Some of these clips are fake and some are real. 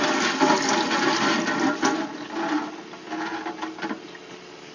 real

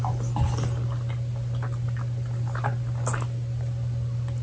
real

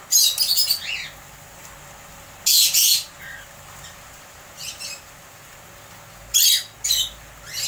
real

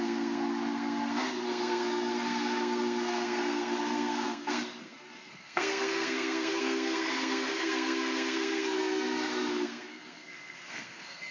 fake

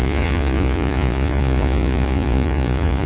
fake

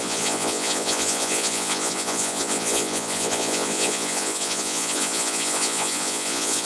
fake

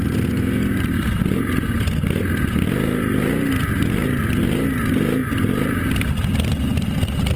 real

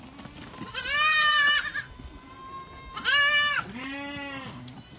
real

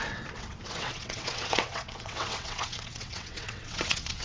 fake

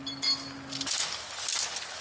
real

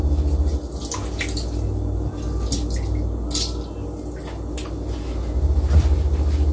real